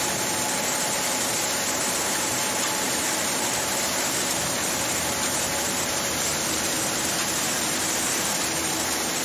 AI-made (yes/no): yes